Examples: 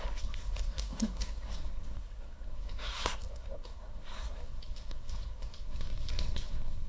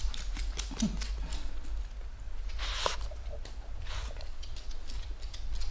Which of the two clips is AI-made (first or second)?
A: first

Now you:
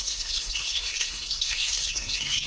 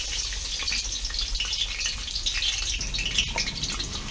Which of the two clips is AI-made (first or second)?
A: first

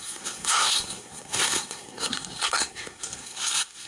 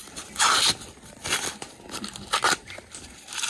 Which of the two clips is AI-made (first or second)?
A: first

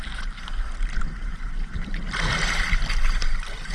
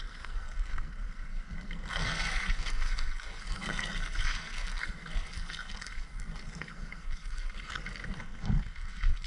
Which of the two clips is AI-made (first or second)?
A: second